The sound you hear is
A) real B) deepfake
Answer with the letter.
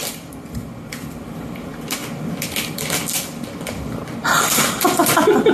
A